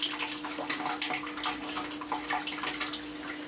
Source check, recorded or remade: recorded